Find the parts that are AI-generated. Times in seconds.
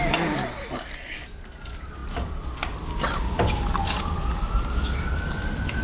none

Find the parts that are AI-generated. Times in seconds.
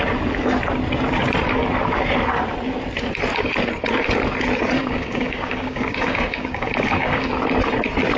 4.8-7.3 (codec, DAC)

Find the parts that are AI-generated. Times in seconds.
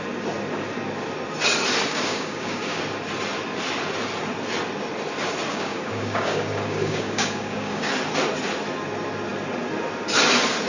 1.9-2.8 (codec, DAC); 5.5-7.9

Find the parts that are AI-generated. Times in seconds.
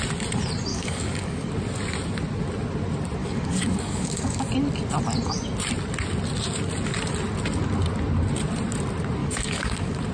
0.7-1.5 (codec, DAC); 3.2-4.5; 9.2-10.1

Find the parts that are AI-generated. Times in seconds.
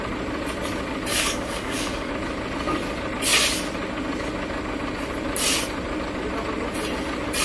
1.1-2.1 (codec, DAC)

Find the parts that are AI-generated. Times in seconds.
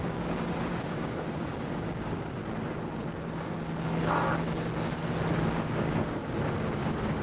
0.0-2.4 (codec, DAC); 5.7-7.2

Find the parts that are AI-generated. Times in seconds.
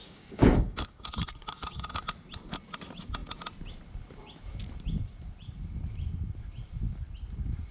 0.0-2.0 (codec, DAC)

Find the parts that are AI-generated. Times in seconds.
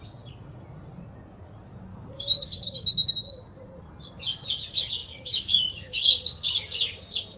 1.9-3.1 (codec, DAC); 5.0-6.0